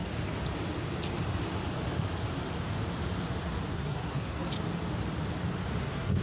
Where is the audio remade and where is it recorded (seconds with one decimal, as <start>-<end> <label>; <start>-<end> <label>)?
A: 0.0-3.7 recorded; 3.7-4.5 remade; 4.5-5.8 recorded; 5.8-6.2 remade